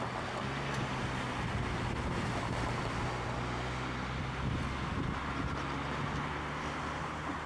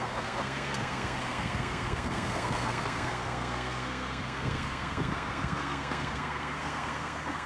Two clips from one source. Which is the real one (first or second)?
first